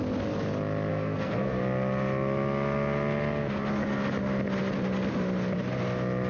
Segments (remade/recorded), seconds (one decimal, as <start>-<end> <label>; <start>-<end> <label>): 0.0-0.9 recorded; 0.9-1.6 remade; 1.6-6.3 recorded